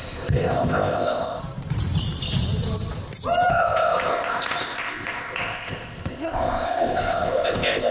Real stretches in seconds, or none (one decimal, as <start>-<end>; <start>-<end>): 1.4-3.5